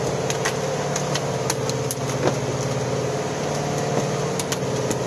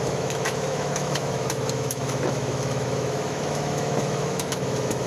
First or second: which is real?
first